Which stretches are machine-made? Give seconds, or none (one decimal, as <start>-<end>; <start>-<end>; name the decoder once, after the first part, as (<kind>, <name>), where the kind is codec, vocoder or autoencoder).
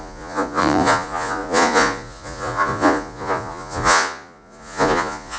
0.0-5.4 (vocoder, Vocos)